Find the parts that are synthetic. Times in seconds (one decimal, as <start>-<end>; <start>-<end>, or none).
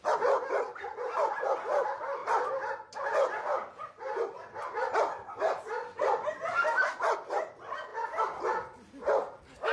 none